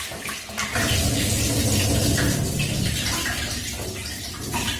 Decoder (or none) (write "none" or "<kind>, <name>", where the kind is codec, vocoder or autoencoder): none